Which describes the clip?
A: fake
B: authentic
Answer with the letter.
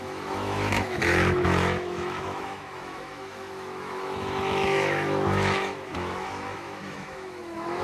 A